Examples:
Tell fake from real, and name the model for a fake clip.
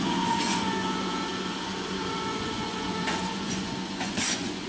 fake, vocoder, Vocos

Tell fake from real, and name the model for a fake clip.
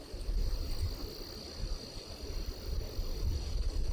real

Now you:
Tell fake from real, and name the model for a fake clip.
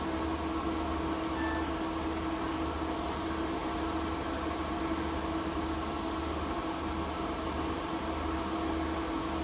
real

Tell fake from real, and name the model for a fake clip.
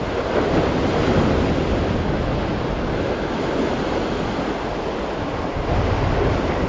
real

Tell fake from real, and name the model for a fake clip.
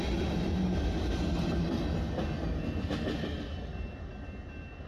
real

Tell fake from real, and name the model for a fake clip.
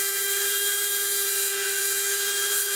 fake, autoencoder, DAC-VAE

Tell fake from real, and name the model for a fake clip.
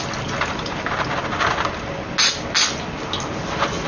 real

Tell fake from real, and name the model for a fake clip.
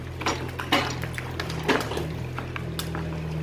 real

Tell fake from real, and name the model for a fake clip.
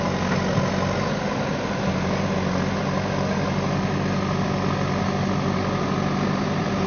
real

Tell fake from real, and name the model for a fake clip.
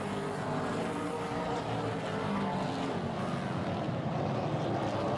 real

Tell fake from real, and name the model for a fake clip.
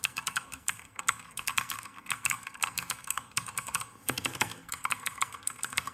fake, codec, SNAC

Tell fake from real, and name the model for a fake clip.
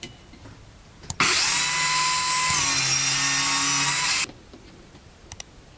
real